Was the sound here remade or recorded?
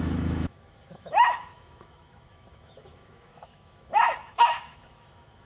remade